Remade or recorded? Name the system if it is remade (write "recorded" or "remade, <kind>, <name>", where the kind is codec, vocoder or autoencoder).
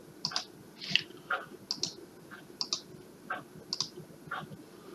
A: recorded